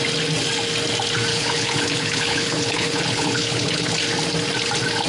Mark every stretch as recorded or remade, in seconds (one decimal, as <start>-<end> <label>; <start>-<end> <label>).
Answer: 0.0-1.3 recorded; 1.3-3.9 remade; 3.9-5.1 recorded